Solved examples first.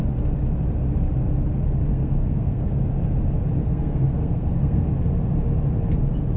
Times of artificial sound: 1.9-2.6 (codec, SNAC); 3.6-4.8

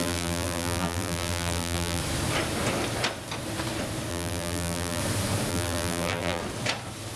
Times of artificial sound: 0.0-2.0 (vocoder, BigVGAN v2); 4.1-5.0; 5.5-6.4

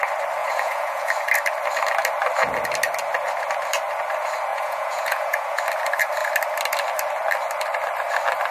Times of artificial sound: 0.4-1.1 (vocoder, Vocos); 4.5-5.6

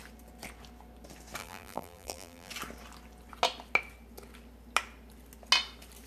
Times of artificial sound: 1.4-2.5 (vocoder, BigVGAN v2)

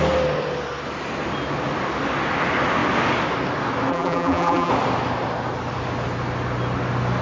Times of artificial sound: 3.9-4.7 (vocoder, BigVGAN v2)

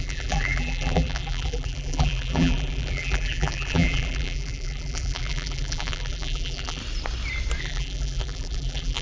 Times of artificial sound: 0.0-6.8 (vocoder, BigVGAN v2); 7.6-9.0